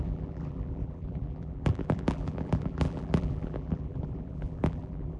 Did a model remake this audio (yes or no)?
yes